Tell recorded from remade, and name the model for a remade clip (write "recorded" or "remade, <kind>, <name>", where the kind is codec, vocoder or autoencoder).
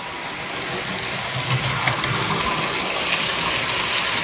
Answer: recorded